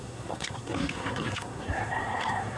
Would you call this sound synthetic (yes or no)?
yes